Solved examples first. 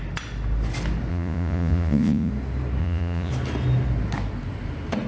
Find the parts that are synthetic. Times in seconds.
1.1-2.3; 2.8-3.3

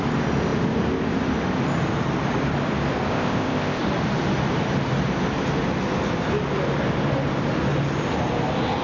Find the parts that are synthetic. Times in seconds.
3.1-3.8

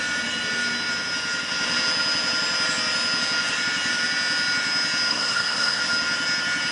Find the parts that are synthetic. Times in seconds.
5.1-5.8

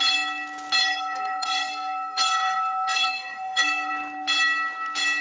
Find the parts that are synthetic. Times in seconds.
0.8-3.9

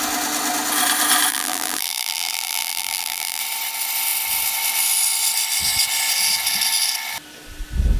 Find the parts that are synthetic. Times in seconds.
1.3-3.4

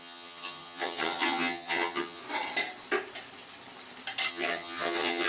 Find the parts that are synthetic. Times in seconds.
0.0-2.2; 4.3-5.3

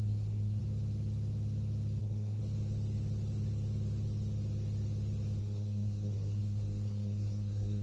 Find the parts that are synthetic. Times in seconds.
0.0-0.6; 2.0-2.4; 5.4-7.8